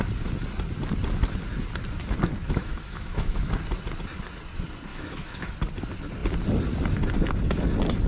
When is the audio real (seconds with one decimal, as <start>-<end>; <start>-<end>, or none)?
0.0-2.4; 3.5-4.9; 5.5-8.1